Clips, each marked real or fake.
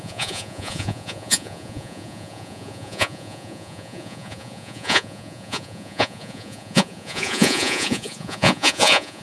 fake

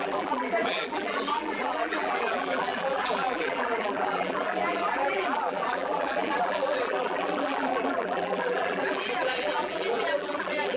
fake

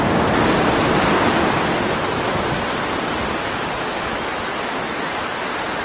real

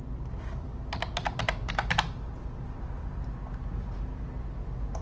real